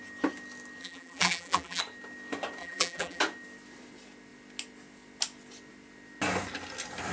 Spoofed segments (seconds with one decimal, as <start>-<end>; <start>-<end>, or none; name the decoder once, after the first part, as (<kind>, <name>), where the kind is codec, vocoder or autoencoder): 0.8-1.8 (vocoder, BigVGAN v2); 2.6-3.2